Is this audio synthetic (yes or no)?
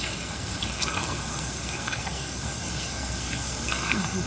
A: yes